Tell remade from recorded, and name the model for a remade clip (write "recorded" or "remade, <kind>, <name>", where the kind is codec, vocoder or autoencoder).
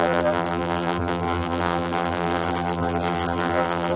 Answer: remade, vocoder, BigVGAN v2